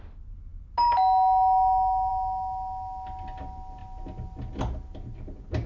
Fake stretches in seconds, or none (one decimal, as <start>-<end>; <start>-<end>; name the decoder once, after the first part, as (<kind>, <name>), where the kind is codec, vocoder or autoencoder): none